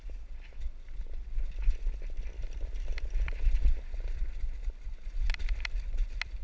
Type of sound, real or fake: real